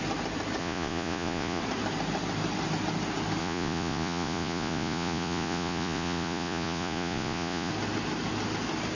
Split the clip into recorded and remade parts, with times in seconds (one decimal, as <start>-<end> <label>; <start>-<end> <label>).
0.0-0.6 recorded; 0.6-1.6 remade; 1.6-3.4 recorded; 3.4-7.7 remade; 7.7-9.0 recorded